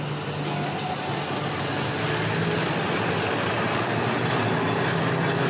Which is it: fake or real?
real